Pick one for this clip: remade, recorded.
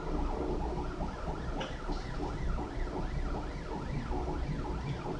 recorded